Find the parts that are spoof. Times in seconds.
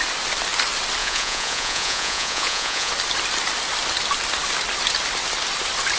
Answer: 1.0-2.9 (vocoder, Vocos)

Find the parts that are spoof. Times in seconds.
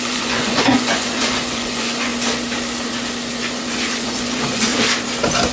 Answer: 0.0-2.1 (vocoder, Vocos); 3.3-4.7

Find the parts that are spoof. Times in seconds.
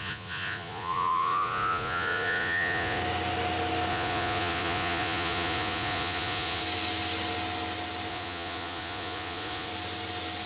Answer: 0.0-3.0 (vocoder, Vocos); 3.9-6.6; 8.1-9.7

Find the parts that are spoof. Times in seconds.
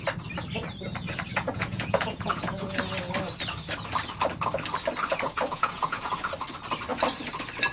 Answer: 1.3-2.8 (vocoder, Vocos); 5.1-6.1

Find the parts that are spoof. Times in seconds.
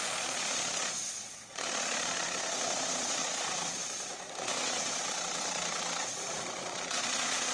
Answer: 0.0-7.5 (vocoder, Vocos)